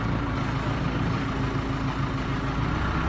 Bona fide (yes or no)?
yes